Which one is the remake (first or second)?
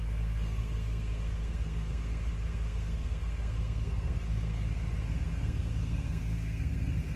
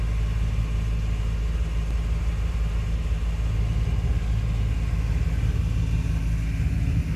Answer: first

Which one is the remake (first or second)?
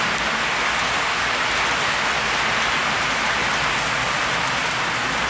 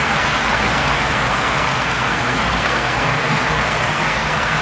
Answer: second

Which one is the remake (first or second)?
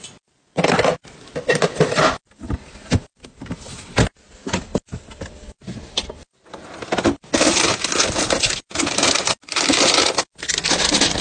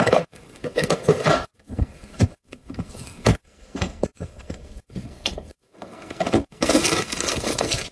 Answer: second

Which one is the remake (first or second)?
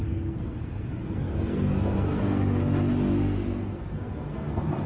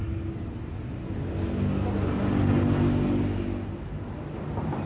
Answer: first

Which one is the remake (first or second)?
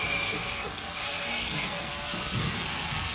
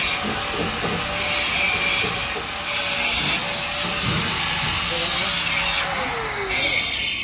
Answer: first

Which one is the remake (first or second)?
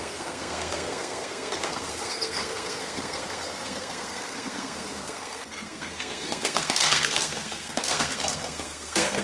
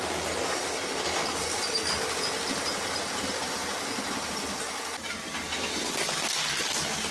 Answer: first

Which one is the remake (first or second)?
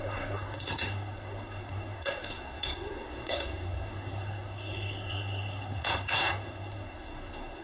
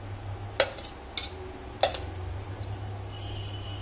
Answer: first